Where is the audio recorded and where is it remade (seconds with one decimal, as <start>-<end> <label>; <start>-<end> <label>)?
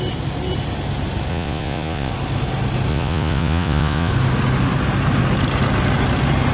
0.0-1.3 recorded; 1.3-2.1 remade; 2.1-2.9 recorded; 2.9-4.1 remade; 4.1-6.5 recorded